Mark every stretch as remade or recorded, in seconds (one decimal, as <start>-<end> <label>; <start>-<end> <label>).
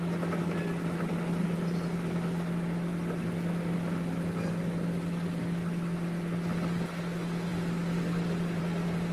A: 0.0-9.1 recorded